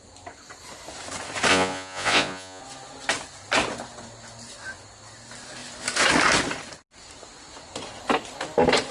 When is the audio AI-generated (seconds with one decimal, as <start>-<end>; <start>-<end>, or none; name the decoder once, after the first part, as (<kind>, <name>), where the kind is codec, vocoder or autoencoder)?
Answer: 1.5-2.6 (vocoder, Vocos)